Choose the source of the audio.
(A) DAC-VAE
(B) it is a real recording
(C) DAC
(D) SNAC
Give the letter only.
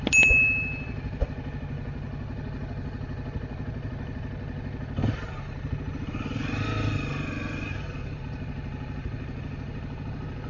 B